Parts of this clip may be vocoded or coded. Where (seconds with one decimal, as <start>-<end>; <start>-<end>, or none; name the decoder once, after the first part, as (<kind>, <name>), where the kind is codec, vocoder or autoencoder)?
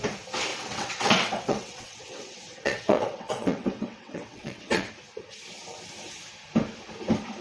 0.5-4.9 (vocoder, WaveNeXt)